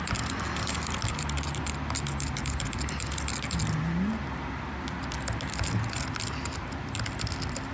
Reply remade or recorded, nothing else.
recorded